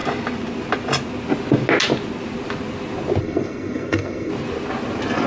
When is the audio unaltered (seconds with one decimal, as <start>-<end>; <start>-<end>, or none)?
0.0-3.2; 4.3-5.3